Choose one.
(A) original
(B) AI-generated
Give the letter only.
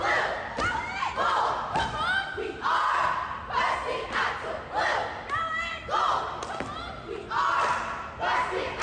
A